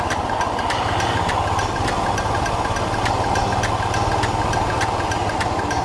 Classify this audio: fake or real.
real